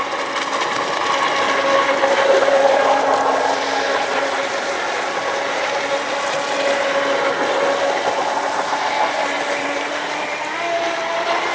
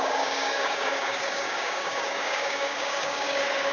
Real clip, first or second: first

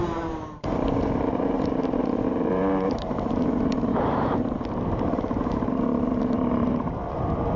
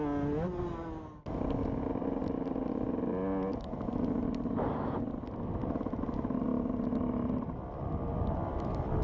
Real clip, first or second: second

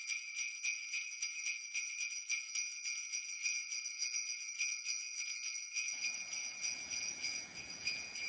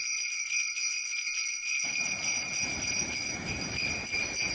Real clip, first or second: second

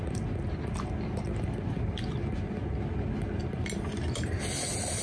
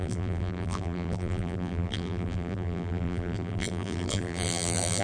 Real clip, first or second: first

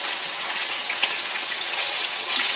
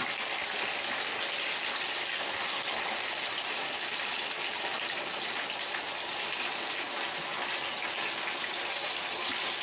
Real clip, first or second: second